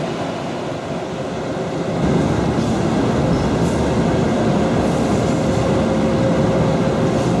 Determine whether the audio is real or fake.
real